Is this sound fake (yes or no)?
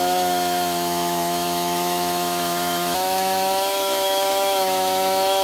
yes